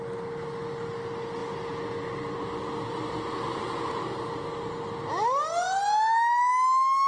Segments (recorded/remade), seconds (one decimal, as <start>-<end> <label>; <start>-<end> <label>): 0.0-7.1 recorded

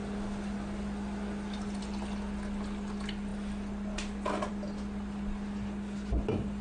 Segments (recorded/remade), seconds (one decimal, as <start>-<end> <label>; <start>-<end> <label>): 0.0-6.6 recorded

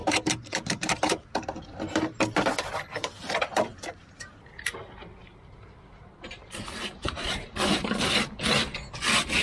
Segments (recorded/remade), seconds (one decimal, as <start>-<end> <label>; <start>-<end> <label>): 0.0-2.2 remade; 2.2-3.7 recorded; 3.7-4.4 remade; 4.4-5.2 recorded; 5.2-8.4 remade; 8.4-9.4 recorded

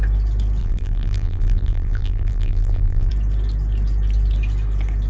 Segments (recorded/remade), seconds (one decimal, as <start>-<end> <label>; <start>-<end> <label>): 0.0-0.6 recorded; 0.6-3.1 remade; 3.1-5.1 recorded

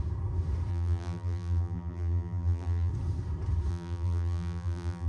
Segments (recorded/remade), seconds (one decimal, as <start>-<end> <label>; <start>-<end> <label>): 0.0-0.7 recorded; 0.7-2.9 remade; 2.9-3.7 recorded; 3.7-5.1 remade

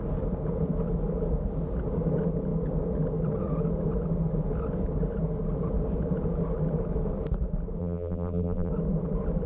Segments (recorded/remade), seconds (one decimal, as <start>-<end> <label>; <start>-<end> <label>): 0.0-7.8 recorded; 7.8-8.7 remade; 8.7-9.5 recorded

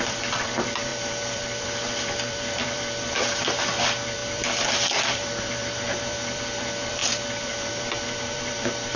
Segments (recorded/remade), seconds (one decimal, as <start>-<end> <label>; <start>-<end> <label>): 0.0-9.0 remade